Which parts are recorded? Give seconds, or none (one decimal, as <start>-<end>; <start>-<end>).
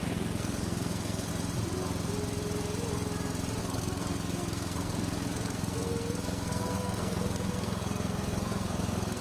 1.3-3.6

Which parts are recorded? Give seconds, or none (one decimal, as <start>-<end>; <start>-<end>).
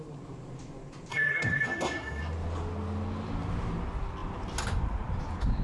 0.0-1.1; 2.2-5.6